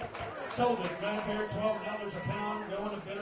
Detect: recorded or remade recorded